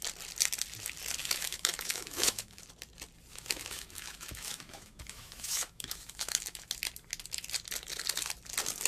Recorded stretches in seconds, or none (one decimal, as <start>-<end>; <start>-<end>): 0.0-1.2; 2.6-3.3; 6.7-8.9